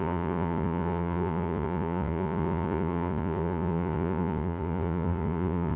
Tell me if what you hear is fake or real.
fake